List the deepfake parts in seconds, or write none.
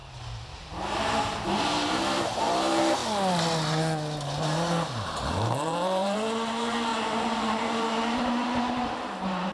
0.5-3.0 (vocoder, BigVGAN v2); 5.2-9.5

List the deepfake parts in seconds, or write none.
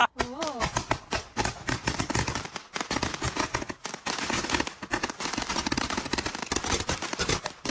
none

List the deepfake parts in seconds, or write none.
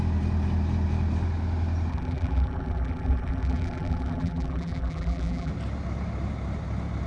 1.9-5.5 (vocoder, BigVGAN v2)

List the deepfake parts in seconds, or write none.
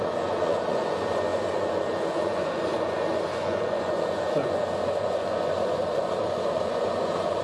0.0-7.4 (vocoder, Vocos)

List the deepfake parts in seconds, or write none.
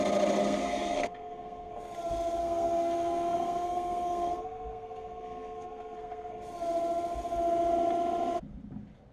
0.4-1.7 (codec, SNAC); 2.4-6.3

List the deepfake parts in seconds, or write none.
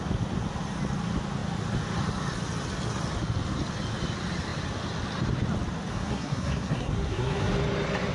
5.9-7.5 (codec, SNAC)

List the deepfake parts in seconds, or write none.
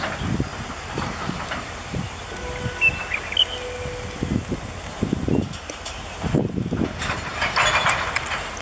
0.5-2.0 (vocoder, BigVGAN v2); 7.3-8.1